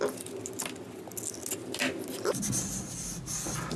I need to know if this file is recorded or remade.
recorded